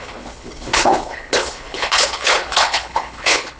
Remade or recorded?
remade